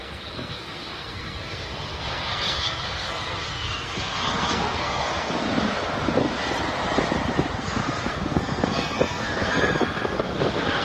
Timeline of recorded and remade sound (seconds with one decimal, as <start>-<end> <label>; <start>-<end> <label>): 0.0-5.5 remade; 5.5-7.6 recorded; 7.6-10.8 remade